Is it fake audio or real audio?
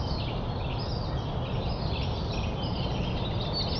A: real